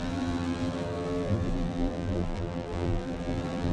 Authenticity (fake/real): fake